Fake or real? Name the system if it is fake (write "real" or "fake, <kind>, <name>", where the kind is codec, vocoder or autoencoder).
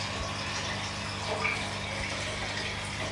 real